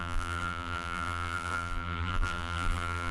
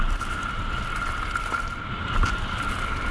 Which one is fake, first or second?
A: first